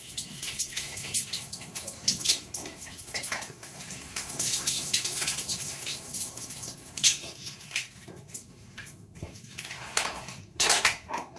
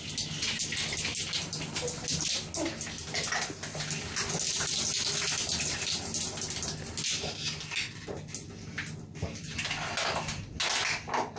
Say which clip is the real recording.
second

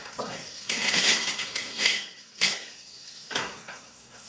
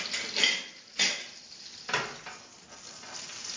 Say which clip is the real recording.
second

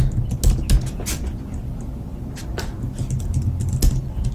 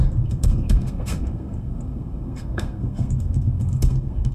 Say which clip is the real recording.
first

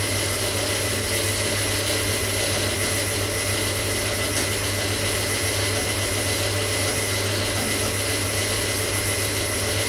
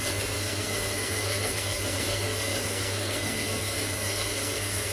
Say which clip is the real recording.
first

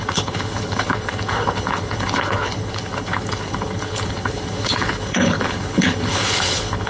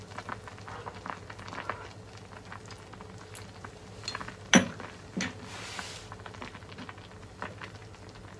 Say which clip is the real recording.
second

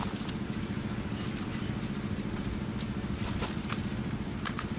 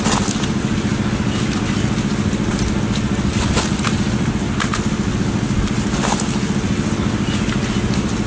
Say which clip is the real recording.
second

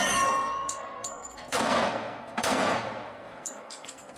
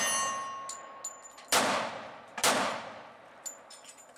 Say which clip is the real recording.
second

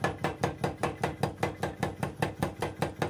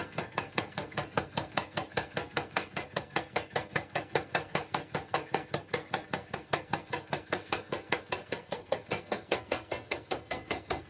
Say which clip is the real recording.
first